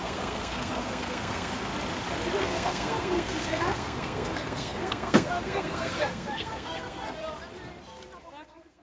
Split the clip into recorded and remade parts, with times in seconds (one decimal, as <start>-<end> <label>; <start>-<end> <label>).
0.0-1.7 remade; 1.7-2.4 recorded; 2.4-7.2 remade; 7.2-8.2 recorded; 8.2-8.8 remade